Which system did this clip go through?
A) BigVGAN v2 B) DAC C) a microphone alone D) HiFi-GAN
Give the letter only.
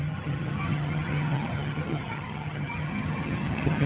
D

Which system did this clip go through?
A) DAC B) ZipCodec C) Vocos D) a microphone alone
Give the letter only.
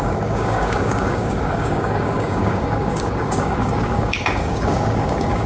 A